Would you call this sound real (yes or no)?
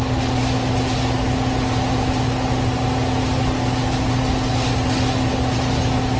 yes